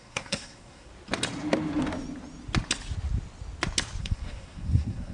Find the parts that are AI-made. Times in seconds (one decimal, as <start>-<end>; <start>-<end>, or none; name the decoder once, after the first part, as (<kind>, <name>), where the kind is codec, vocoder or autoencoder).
0.0-0.9 (codec, SNAC); 4.0-5.1